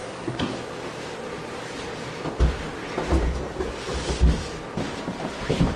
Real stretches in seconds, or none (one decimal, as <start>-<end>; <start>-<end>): 0.6-5.8